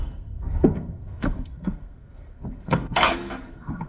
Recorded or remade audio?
remade